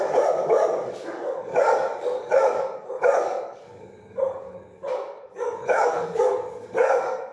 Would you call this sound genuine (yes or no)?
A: no